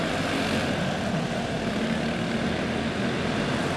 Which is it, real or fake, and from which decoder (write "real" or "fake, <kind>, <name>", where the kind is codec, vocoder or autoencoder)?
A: real